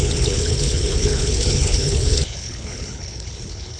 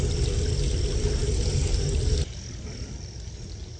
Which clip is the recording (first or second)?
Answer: second